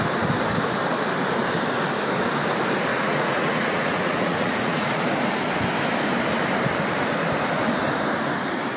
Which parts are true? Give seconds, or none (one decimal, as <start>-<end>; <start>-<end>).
0.0-2.9; 5.1-8.8